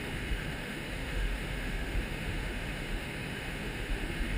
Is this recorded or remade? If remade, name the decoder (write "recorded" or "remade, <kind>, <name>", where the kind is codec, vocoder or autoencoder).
remade, autoencoder, DAC-VAE